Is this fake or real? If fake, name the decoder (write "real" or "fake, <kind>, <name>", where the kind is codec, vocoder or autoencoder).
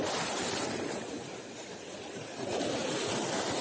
real